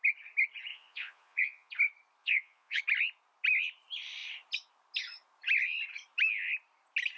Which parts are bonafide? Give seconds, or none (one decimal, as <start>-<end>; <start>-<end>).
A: 0.0-0.7; 1.7-2.2; 2.8-7.2